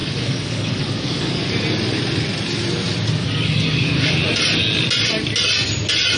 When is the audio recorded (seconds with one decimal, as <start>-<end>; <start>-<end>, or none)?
1.4-3.2; 4.1-6.2